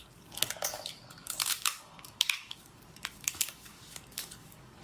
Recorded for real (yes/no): no